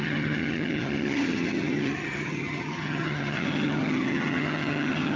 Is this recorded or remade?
remade